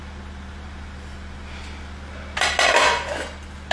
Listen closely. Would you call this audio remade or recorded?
recorded